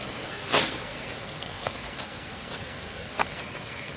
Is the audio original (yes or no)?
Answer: no